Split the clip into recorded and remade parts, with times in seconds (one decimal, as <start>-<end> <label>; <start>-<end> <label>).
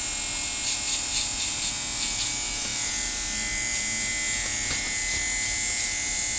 0.0-6.4 recorded